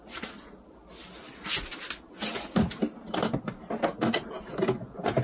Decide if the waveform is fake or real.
real